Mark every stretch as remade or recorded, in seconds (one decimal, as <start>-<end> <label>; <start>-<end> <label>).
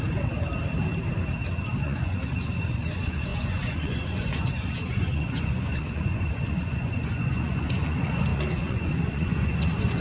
0.0-1.8 recorded; 1.8-10.0 remade